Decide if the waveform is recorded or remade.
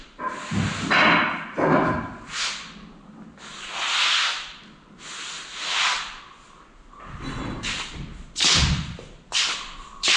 recorded